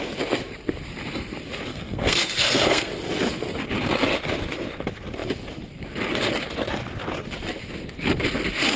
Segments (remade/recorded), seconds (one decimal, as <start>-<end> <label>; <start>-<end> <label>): 0.0-1.7 recorded; 1.7-2.9 remade; 2.9-8.8 recorded